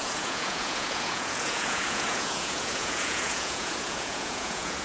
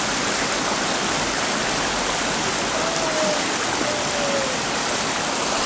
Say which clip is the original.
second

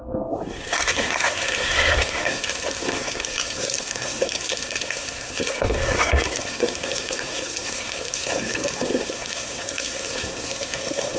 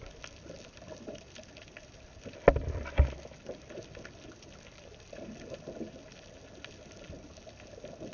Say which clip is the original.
second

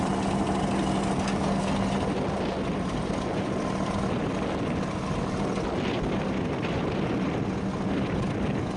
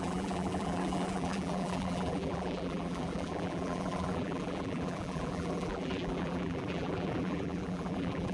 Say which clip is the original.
first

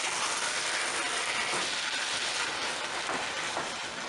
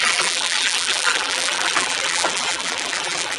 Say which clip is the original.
first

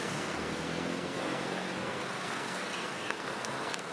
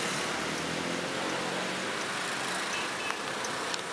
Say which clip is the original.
second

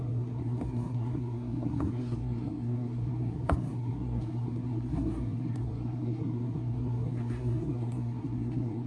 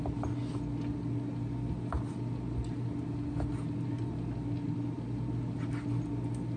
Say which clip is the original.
second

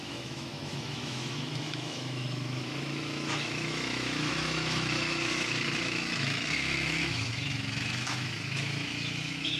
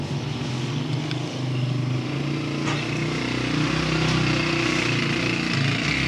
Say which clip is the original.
second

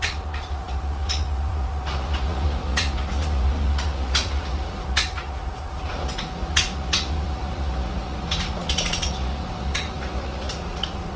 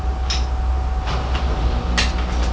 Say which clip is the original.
second